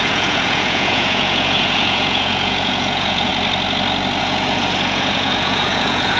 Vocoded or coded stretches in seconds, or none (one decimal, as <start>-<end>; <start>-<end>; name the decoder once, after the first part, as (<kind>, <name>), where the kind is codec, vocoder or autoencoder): 0.0-3.3 (vocoder, Vocos); 4.2-6.2